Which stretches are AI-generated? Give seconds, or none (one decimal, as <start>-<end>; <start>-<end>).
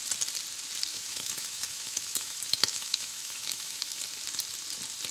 0.9-4.0